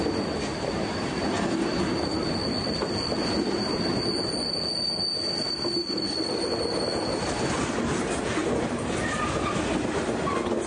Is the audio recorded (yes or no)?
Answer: yes